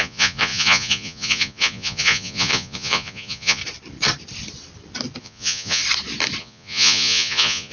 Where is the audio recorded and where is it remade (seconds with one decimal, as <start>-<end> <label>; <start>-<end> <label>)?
0.0-3.6 remade; 3.6-5.2 recorded; 5.2-5.8 remade; 5.8-6.4 recorded; 6.4-7.7 remade